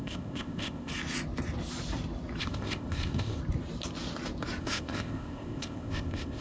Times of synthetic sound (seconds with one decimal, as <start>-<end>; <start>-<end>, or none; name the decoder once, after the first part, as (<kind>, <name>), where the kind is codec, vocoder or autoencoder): 0.0-0.9 (codec, ZipCodec); 2.4-3.4; 4.6-6.4